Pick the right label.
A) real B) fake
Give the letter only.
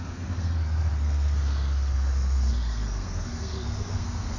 B